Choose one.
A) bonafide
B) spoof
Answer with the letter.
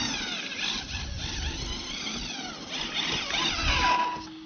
A